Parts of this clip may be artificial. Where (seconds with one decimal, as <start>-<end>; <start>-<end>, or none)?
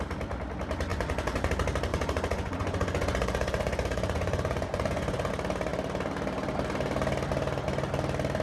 0.9-1.5; 1.9-5.3